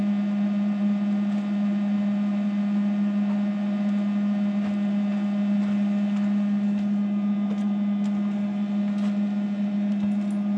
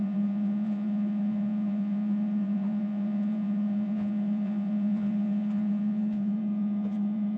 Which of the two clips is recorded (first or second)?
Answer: first